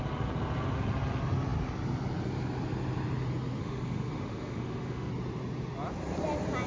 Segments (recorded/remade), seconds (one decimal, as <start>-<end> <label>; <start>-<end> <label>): 0.0-3.6 recorded; 3.6-5.1 remade; 5.1-6.7 recorded